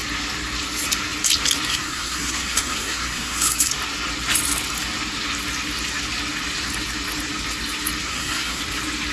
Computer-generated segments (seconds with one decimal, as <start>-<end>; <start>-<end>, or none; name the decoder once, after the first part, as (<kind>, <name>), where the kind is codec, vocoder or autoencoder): 1.7-3.7 (codec, SNAC); 8.0-8.6